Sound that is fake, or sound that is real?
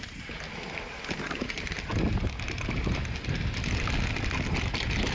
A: real